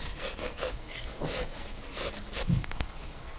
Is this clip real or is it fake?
fake